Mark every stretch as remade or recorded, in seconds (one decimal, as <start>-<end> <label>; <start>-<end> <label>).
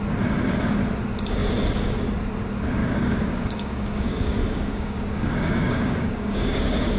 0.0-2.8 recorded; 2.8-7.0 remade